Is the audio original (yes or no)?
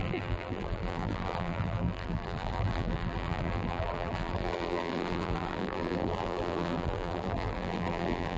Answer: no